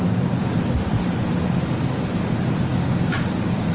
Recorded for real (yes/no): yes